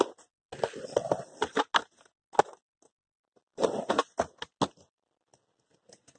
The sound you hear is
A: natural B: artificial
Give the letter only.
A